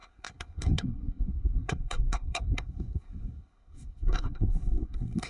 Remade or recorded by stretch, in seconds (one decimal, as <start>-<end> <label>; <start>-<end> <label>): 0.0-5.3 remade